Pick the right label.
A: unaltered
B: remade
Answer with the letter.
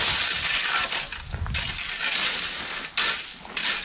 A